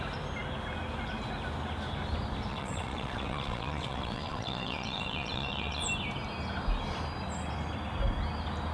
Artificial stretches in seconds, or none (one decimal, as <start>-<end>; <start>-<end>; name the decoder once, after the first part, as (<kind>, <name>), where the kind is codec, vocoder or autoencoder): 2.5-5.8 (vocoder, WaveNeXt)